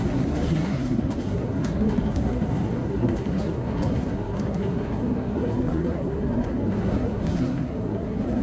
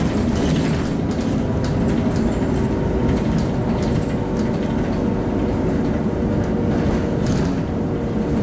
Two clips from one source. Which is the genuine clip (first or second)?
second